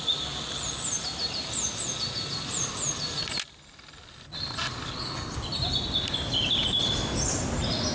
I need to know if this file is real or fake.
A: real